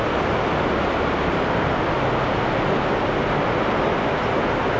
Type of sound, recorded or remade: recorded